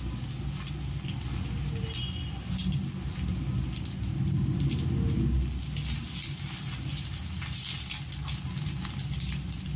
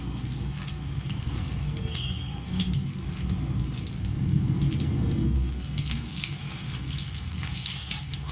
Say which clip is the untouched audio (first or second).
first